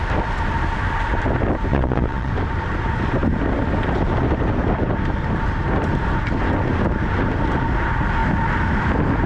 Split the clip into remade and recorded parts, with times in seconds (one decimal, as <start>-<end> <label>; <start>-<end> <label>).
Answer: 0.0-1.7 recorded; 1.7-2.3 remade; 2.3-9.3 recorded